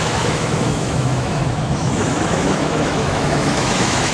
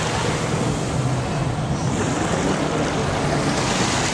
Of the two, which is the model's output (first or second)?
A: first